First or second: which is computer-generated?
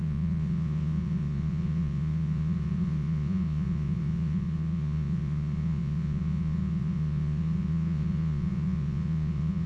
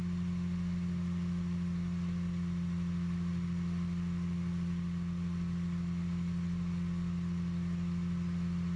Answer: first